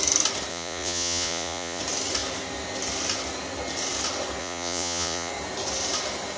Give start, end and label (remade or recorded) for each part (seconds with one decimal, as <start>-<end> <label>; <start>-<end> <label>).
0.0-0.5 recorded; 0.5-1.8 remade; 1.8-4.4 recorded; 4.4-5.3 remade; 5.3-6.4 recorded